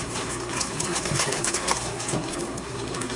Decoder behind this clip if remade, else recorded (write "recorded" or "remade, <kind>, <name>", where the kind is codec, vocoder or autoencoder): remade, codec, SNAC